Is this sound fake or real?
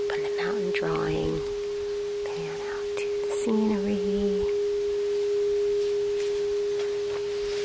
real